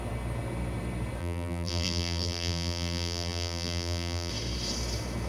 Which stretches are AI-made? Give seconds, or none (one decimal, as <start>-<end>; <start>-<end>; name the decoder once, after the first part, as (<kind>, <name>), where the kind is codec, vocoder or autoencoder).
1.2-4.3 (vocoder, BigVGAN v2)